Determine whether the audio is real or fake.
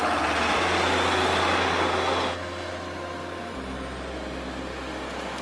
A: real